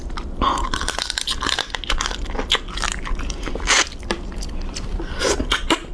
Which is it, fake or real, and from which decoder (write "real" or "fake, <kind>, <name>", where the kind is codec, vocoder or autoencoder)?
real